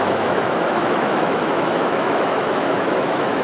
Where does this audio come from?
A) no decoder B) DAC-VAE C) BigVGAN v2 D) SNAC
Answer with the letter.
B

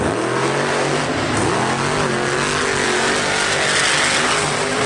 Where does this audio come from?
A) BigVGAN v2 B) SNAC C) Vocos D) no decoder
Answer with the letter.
D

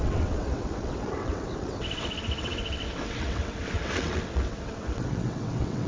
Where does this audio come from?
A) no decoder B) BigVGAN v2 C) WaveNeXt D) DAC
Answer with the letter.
C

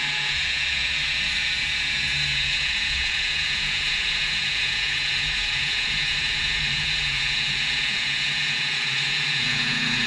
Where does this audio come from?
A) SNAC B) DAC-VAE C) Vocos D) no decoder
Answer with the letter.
C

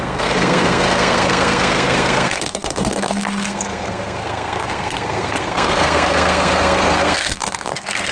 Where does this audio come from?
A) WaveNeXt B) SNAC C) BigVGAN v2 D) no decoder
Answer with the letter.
B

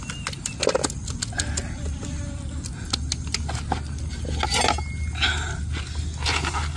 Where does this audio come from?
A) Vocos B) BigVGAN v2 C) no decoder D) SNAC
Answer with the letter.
C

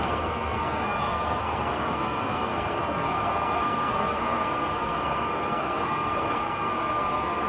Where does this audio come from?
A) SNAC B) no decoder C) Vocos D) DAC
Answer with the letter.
A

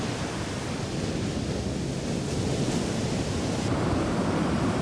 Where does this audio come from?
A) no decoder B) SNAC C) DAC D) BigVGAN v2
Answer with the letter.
A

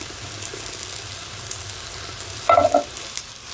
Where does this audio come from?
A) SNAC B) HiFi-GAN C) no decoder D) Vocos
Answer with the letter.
C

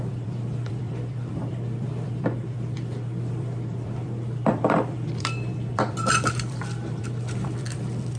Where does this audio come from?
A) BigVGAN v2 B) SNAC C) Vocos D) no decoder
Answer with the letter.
A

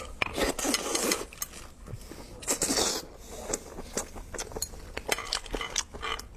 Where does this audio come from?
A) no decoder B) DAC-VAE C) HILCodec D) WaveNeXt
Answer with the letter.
A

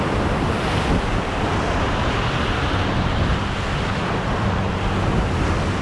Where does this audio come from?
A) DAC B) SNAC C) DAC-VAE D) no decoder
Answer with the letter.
D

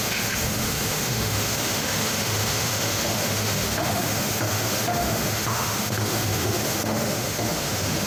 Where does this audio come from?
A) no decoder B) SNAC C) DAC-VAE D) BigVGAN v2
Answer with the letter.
C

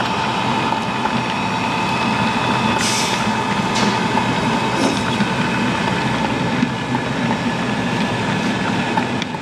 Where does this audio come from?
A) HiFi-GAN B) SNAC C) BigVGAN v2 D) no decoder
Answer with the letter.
D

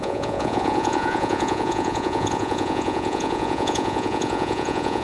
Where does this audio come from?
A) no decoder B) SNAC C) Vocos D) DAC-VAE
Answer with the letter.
C